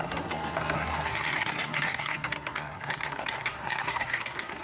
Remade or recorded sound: remade